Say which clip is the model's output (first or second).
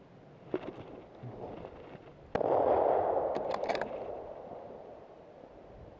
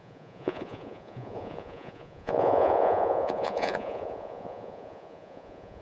second